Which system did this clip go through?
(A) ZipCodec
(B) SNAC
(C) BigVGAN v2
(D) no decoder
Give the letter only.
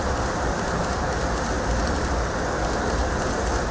D